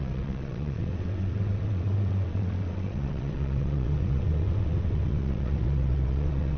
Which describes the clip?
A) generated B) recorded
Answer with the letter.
A